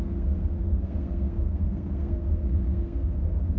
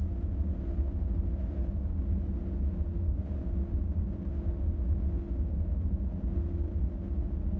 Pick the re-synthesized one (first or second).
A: first